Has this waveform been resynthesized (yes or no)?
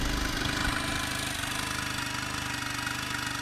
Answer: no